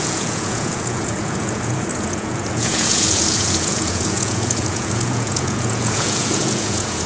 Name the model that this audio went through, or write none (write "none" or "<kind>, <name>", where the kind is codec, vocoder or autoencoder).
vocoder, Vocos